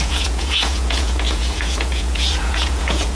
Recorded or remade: remade